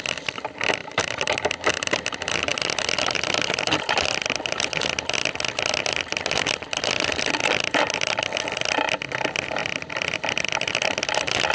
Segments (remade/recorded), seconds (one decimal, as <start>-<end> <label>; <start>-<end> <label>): 0.0-7.4 recorded; 7.4-8.2 remade; 8.2-9.6 recorded; 9.6-10.5 remade; 10.5-11.5 recorded

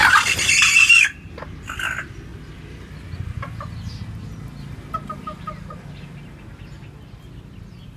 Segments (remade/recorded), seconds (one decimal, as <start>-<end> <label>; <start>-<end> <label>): 0.0-8.0 recorded

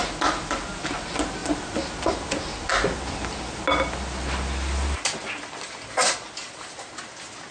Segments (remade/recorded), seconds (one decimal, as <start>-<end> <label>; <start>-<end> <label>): 0.0-7.5 recorded

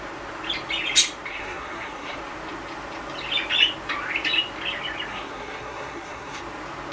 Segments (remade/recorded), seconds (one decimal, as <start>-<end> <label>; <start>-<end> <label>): 0.0-1.3 recorded; 1.3-2.2 remade; 2.2-5.1 recorded; 5.1-6.4 remade; 6.4-6.9 recorded